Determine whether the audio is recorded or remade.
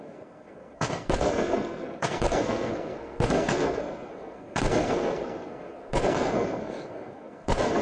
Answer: remade